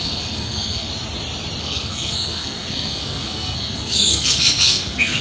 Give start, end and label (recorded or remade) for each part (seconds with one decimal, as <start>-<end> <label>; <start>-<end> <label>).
0.0-0.9 remade; 0.9-1.6 recorded; 1.6-5.2 remade